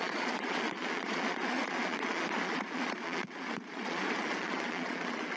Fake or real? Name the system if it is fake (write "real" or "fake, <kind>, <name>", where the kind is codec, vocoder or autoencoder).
fake, vocoder, Vocos